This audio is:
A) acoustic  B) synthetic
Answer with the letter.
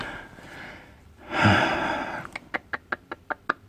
A